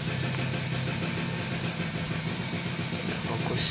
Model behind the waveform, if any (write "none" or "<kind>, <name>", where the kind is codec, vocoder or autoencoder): none